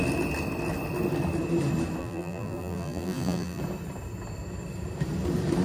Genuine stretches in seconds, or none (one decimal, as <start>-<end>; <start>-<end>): 0.0-2.0; 3.6-5.6